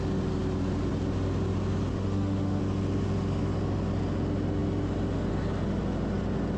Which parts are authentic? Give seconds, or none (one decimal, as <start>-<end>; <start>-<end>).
0.0-1.9; 2.6-6.6